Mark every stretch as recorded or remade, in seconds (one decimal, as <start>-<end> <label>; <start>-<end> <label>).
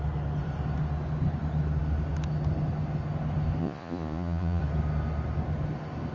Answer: 0.0-3.6 recorded; 3.6-4.6 remade; 4.6-6.1 recorded